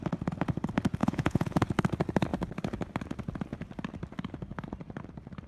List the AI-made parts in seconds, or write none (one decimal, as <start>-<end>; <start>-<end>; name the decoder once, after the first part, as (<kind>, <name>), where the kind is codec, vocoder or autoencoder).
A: 1.0-1.6 (vocoder, Vocos)